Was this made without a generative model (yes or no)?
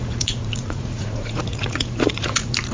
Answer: no